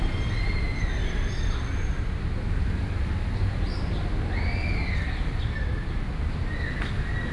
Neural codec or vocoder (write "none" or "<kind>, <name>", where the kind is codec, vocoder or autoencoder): none